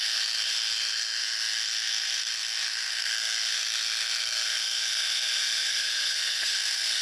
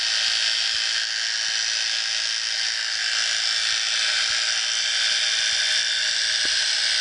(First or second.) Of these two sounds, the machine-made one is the first